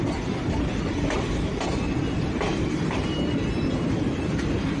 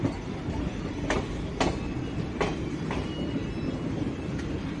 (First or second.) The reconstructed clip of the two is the first